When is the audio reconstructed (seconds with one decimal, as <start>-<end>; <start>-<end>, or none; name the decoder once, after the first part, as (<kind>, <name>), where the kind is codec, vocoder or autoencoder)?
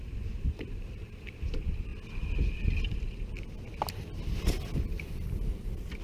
0.0-1.9 (vocoder, BigVGAN v2); 5.5-6.0